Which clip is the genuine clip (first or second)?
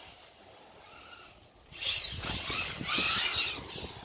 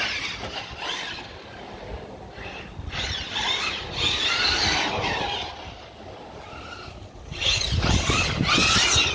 second